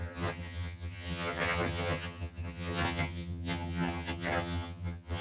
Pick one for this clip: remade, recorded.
remade